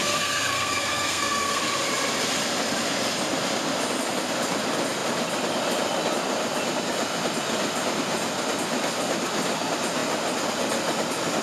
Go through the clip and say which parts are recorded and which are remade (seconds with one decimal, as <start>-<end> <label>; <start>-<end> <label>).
0.0-1.6 remade; 1.6-11.4 recorded